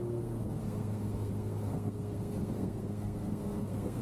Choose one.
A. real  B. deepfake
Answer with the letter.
B